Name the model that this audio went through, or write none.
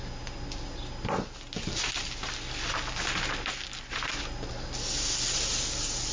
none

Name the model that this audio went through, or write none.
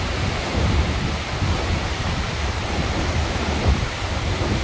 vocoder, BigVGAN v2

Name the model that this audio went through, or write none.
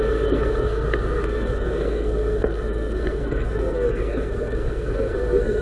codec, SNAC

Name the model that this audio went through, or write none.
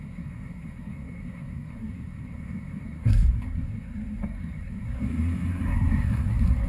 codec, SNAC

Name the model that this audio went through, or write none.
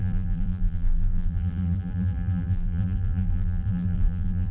vocoder, BigVGAN v2